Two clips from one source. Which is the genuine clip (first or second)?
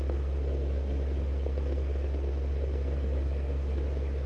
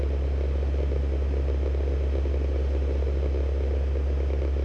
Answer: second